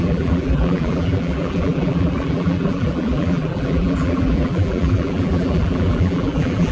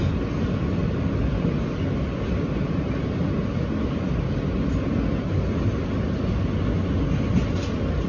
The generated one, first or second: first